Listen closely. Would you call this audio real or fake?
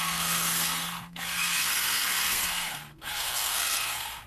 fake